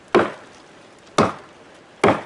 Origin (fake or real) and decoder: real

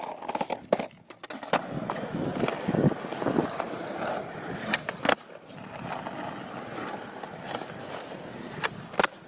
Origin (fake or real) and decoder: real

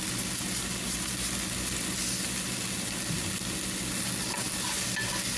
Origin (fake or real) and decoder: real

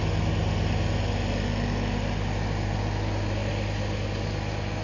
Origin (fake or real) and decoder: real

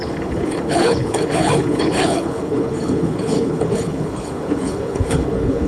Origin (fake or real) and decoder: fake, codec, HILCodec